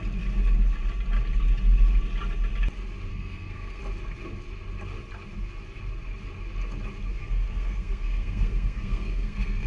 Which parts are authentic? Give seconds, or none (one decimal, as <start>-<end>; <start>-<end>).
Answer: 0.0-3.1; 3.8-7.2